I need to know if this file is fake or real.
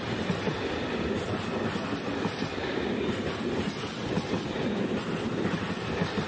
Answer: real